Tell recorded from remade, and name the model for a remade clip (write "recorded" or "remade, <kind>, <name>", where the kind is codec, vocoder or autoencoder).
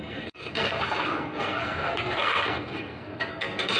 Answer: remade, codec, SNAC